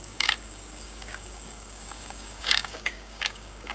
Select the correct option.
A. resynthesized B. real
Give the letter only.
A